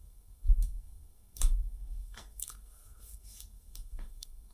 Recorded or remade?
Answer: remade